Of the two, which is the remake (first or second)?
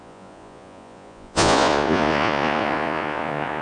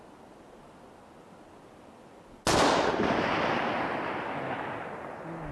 first